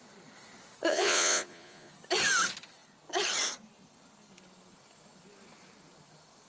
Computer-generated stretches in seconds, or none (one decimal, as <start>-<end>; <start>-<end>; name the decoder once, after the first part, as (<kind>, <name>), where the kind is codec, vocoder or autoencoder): 0.9-1.9 (vocoder, Vocos)